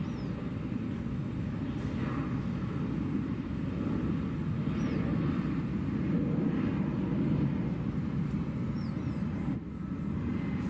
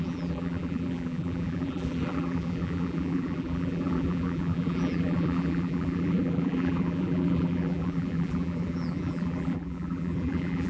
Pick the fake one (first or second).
second